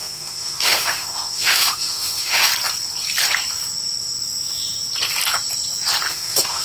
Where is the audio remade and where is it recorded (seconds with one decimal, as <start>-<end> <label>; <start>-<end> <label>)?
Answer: 0.0-2.5 remade; 2.5-6.1 recorded; 6.1-6.6 remade